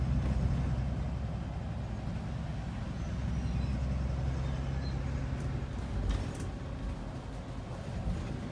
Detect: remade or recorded recorded